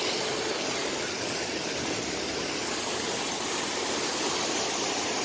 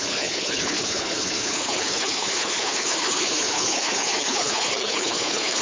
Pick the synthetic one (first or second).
second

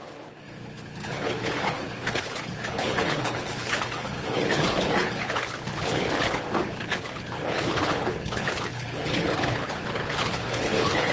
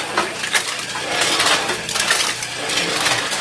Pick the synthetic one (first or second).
first